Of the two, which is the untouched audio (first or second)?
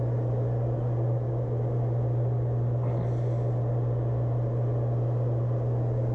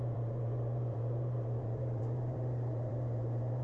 first